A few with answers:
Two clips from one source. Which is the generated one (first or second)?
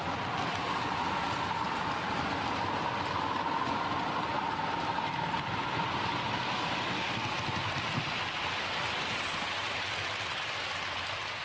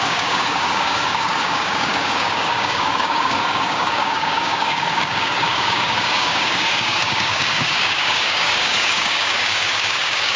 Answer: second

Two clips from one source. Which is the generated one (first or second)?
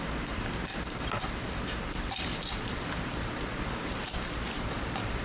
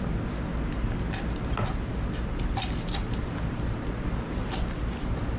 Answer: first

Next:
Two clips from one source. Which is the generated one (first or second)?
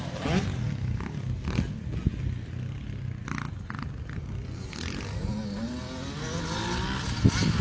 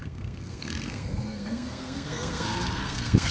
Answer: second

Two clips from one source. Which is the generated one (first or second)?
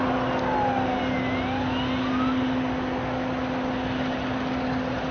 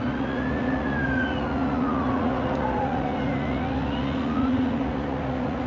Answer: second